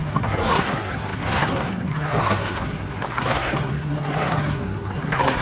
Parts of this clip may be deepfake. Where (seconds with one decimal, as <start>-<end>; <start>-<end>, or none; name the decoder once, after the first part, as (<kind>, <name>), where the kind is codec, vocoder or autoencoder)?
0.0-5.4 (codec, SNAC)